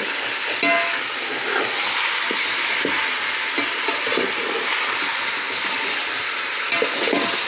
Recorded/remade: recorded